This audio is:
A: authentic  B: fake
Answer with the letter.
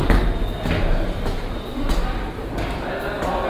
A